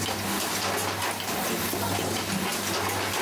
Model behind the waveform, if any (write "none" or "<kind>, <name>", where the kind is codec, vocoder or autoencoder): none